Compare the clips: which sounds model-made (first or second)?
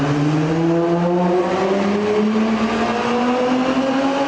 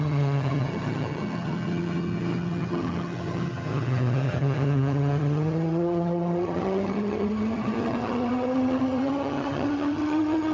second